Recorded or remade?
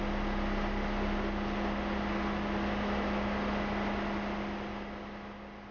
recorded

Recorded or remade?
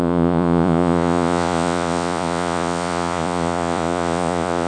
remade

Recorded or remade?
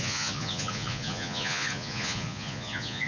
remade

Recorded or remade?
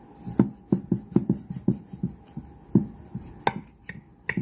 recorded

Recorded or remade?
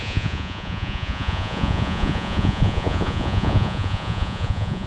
remade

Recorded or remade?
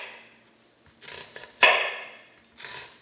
recorded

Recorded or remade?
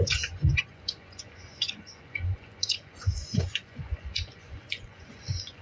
remade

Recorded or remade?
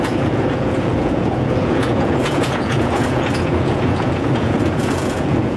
remade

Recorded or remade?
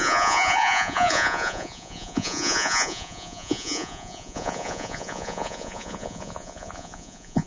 remade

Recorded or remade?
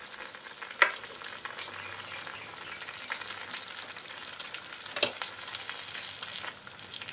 recorded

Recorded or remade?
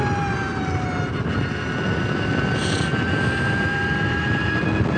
recorded